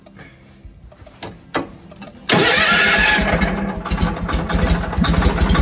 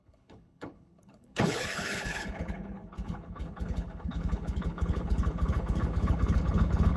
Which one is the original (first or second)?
first